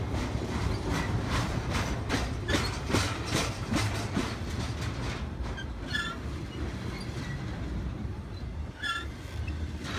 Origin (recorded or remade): recorded